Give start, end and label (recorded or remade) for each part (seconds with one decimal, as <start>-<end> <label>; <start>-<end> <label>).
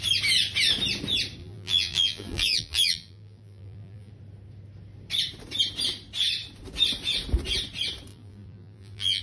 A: 0.0-1.4 recorded; 1.4-4.1 remade; 4.1-8.1 recorded; 8.1-9.2 remade